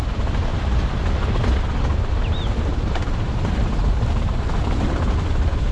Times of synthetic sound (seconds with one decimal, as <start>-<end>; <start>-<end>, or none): 0.5-1.0; 2.7-5.7